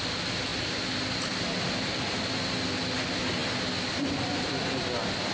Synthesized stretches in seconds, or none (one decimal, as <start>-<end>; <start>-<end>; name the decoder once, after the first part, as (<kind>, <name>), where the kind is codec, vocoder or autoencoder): none

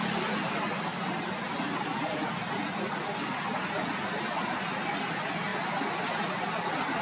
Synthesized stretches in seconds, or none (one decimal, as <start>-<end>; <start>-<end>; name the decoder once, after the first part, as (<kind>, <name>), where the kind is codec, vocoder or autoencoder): none